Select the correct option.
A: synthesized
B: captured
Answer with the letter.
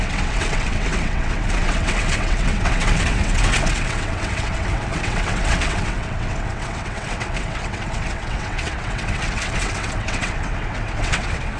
A